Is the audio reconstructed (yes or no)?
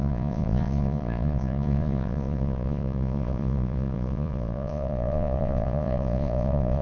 yes